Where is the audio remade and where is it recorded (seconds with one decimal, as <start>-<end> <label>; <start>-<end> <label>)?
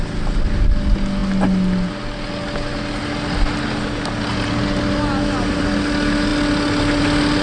0.0-7.4 recorded